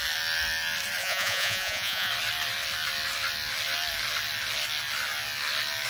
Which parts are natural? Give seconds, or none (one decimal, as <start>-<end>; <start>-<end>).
0.0-1.0; 2.1-5.9